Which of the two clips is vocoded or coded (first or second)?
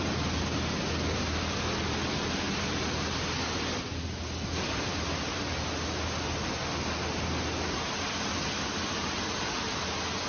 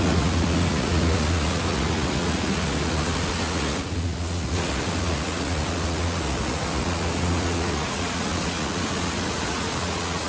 second